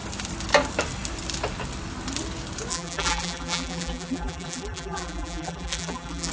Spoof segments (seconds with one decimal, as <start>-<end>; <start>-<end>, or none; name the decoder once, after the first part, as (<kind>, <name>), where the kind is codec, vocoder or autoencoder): 2.7-6.3 (vocoder, BigVGAN v2)